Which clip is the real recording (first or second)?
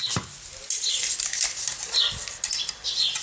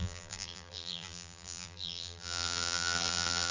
first